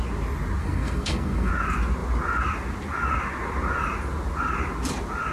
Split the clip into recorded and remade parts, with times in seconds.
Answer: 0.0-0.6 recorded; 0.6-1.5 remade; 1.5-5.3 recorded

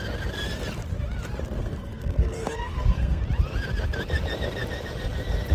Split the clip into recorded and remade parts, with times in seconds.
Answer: 0.0-1.6 recorded; 1.6-3.2 remade; 3.2-5.5 recorded

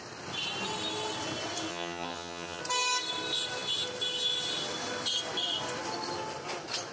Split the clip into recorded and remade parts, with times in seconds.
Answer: 0.0-1.7 recorded; 1.7-2.6 remade; 2.6-6.9 recorded

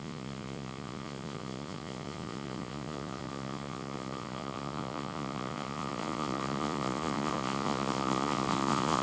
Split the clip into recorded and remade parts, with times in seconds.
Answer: 0.0-9.0 remade

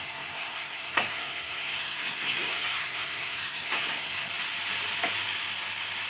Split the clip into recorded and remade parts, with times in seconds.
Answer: 0.0-4.3 remade; 4.3-6.1 recorded